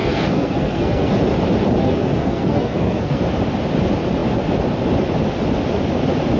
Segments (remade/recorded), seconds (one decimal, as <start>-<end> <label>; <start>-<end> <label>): 0.0-1.2 remade; 1.2-1.8 recorded; 1.8-3.2 remade; 3.2-6.4 recorded